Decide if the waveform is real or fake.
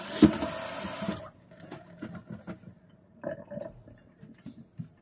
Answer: real